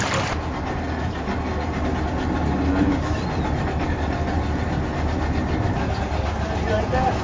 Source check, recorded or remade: recorded